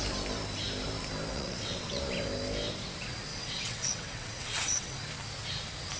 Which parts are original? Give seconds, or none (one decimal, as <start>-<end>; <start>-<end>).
0.0-1.3; 2.0-3.3; 5.0-6.0

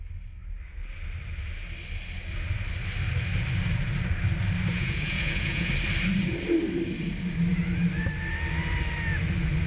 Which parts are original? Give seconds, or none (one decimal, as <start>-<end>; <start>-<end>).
0.0-4.7; 5.7-9.7

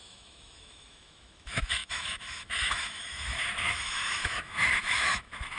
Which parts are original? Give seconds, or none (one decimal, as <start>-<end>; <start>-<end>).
none

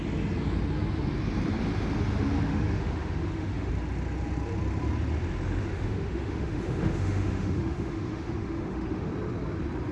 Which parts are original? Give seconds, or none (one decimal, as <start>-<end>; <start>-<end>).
0.0-2.5; 3.7-5.6; 9.1-9.9

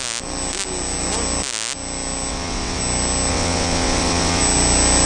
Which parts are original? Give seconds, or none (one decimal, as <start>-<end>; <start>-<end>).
0.0-2.3; 2.8-3.3; 4.4-5.1

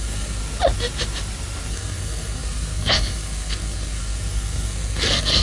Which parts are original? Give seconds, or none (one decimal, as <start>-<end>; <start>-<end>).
0.4-1.7

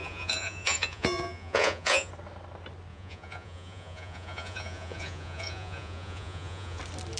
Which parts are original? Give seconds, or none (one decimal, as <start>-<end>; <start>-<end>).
2.1-2.9; 6.8-7.2

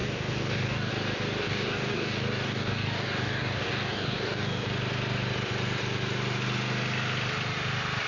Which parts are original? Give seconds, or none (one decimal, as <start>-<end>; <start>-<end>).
0.9-1.4; 4.7-8.1